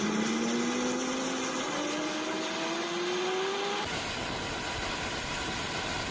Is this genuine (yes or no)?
yes